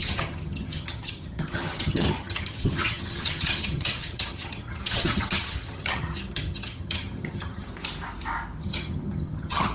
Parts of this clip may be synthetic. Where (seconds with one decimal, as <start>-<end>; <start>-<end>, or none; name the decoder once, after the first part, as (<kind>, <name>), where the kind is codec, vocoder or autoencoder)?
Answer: 0.0-7.7 (vocoder, HiFi-GAN); 8.6-9.7